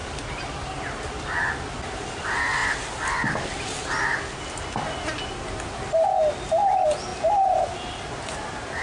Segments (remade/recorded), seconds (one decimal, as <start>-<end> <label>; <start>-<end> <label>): 0.0-8.8 recorded